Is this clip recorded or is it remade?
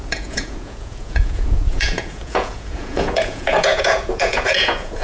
remade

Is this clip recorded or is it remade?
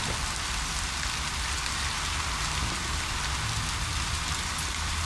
recorded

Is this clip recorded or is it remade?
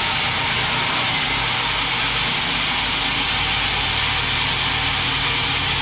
recorded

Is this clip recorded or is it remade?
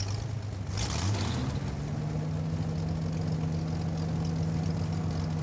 recorded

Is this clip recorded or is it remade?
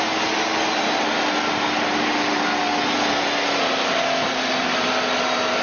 recorded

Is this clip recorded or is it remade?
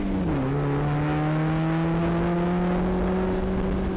recorded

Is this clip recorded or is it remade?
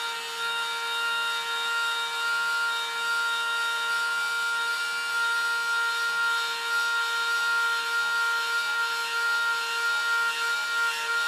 recorded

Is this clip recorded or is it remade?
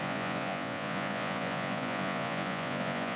remade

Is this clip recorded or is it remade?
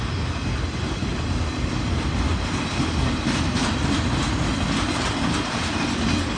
recorded